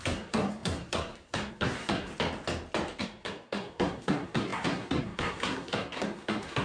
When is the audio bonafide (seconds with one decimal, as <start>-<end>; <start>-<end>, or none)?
2.1-3.0